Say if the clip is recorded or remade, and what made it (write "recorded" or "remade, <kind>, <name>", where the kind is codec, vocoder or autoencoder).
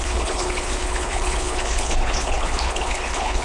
remade, codec, HILCodec